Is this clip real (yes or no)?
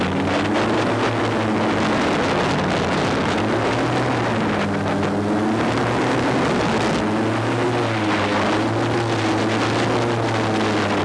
yes